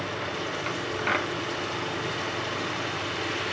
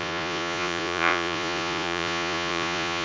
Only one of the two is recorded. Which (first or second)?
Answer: first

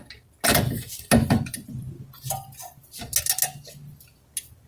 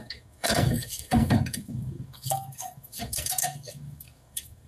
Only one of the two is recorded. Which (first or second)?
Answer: first